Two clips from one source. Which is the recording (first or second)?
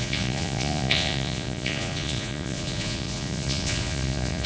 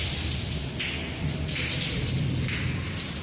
second